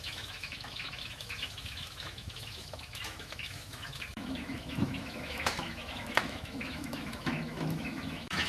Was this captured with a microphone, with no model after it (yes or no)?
no